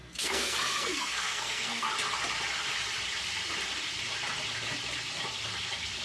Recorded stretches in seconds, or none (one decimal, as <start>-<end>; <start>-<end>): 1.9-6.0